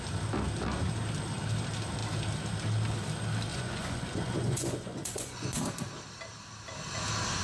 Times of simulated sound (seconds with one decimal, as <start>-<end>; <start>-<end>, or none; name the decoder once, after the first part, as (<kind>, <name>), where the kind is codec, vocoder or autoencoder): 3.5-5.5 (vocoder, Vocos)